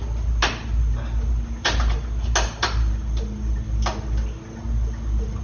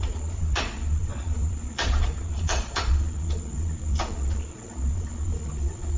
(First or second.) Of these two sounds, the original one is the first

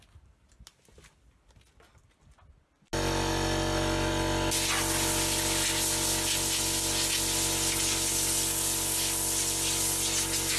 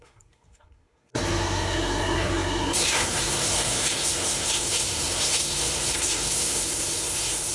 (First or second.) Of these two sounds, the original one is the first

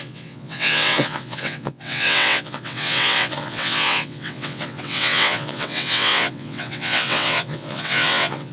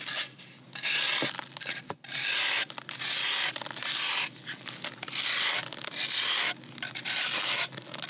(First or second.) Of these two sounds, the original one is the second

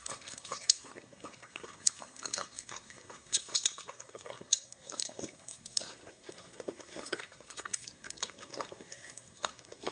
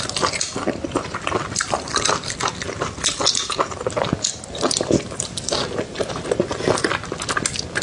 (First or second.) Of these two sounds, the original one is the second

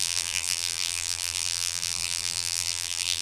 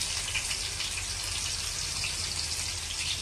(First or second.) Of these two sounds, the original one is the second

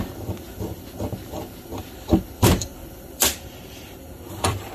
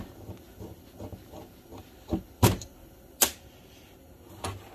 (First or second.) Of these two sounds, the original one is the second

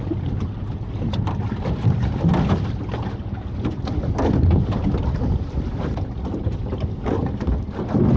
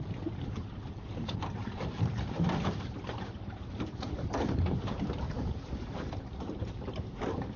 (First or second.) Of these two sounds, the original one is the first